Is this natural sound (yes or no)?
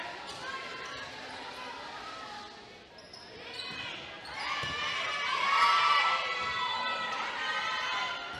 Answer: yes